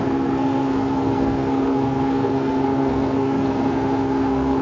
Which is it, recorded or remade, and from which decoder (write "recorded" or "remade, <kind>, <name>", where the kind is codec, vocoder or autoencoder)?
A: remade, codec, SNAC